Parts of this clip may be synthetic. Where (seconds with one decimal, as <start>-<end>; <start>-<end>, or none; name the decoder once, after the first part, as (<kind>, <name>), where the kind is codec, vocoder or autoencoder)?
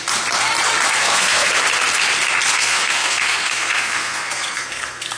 1.0-1.5 (codec, SNAC); 2.5-5.2